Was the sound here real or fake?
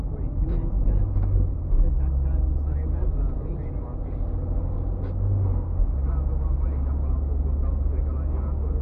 real